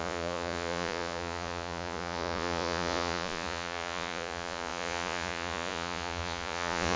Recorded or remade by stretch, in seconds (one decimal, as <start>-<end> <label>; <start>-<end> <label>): 0.0-7.0 remade